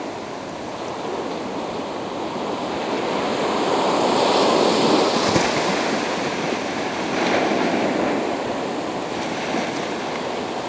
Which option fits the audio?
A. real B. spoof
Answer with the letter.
A